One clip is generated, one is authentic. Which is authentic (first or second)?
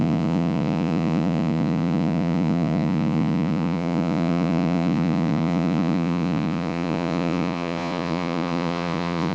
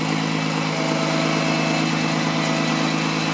second